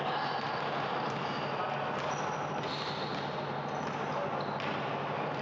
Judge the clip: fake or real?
real